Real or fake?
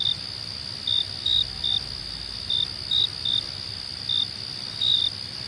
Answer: real